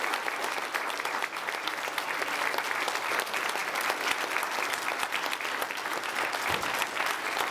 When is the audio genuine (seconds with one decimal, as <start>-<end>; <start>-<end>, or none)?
0.0-7.5